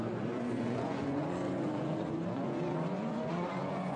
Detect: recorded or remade remade